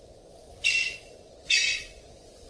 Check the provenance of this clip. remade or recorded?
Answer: remade